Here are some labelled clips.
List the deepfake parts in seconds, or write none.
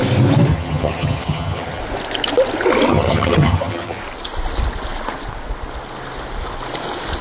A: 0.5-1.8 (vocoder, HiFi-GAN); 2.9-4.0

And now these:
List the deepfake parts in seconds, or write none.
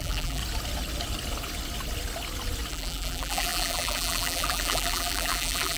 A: 0.0-0.4 (vocoder, BigVGAN v2); 2.7-5.8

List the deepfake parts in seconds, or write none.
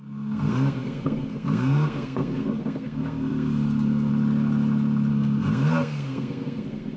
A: 0.0-4.1 (codec, SNAC); 5.1-7.0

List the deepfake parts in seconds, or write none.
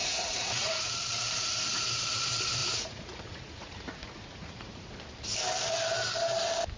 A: 0.0-0.9 (vocoder, Vocos); 2.6-4.9